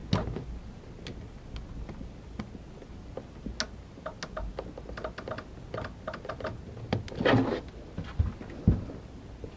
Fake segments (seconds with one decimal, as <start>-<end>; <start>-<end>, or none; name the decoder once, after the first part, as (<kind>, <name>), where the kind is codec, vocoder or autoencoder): none

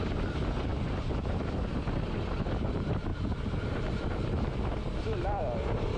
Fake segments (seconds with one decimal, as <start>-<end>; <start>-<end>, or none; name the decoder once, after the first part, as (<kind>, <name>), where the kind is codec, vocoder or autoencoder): 0.0-6.0 (vocoder, BigVGAN v2)

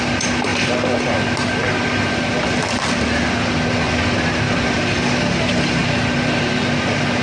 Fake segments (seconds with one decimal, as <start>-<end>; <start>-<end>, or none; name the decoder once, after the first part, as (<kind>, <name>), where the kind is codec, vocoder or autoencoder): 0.0-7.2 (vocoder, BigVGAN v2)